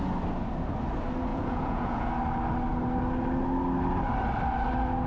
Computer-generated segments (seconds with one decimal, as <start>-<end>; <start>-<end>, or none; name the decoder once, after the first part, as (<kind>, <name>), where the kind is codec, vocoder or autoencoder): 1.3-2.1 (vocoder, Vocos)

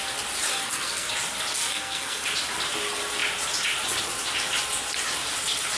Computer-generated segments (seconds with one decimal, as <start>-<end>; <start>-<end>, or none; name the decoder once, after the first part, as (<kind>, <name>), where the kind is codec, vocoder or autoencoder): 0.5-1.1 (codec, SNAC); 1.6-2.2

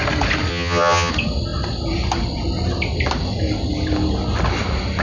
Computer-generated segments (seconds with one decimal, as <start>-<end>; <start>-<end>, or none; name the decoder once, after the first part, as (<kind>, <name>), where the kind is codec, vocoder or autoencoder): 0.5-1.1 (vocoder, HiFi-GAN)

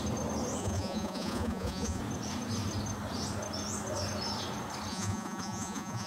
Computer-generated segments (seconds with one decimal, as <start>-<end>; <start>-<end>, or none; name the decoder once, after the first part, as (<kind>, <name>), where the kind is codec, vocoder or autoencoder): 0.6-2.0 (vocoder, Vocos); 4.9-6.1

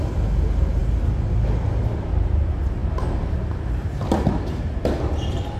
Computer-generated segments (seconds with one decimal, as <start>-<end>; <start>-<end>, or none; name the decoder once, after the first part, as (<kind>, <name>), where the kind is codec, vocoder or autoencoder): none

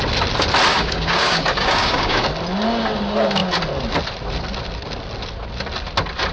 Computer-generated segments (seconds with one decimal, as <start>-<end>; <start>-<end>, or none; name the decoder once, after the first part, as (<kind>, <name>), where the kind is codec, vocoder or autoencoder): 0.7-2.3 (codec, DAC)